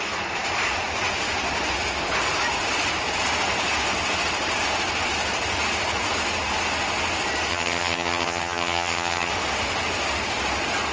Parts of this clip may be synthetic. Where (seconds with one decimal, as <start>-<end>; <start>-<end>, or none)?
7.5-9.3